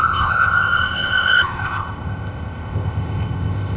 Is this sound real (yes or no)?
no